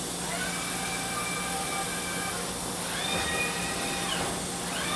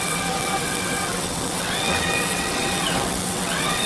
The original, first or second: first